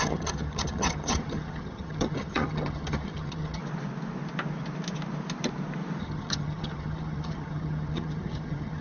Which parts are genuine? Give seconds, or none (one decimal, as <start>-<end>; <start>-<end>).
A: 3.6-6.0